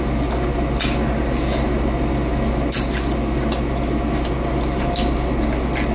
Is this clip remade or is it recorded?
recorded